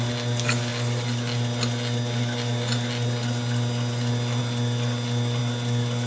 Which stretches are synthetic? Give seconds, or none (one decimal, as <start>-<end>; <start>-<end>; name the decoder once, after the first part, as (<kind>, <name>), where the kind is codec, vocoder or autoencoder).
none